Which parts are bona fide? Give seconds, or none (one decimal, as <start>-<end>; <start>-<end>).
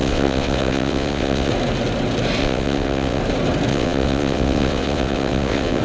1.5-2.4; 3.2-3.7